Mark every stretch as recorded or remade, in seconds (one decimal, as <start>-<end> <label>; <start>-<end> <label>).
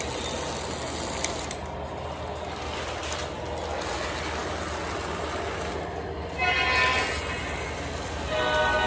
0.0-8.9 recorded